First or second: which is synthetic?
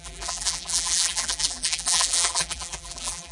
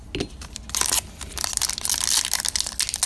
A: first